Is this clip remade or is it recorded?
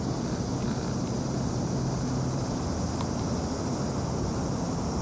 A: recorded